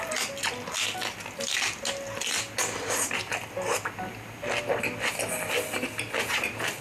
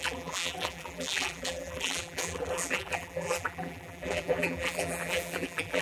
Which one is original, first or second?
first